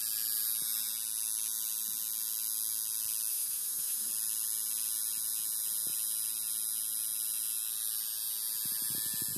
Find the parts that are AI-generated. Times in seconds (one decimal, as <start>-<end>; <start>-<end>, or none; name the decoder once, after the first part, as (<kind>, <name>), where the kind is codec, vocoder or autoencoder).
3.3-4.1 (autoencoder, DAC-VAE)